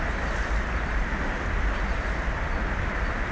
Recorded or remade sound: recorded